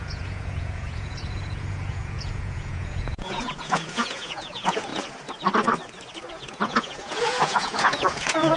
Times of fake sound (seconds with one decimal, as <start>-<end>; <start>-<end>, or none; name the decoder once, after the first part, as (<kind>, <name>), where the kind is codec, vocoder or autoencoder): 0.0-4.9 (vocoder, Vocos); 6.3-8.6